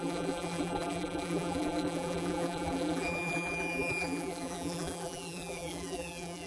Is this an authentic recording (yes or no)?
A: no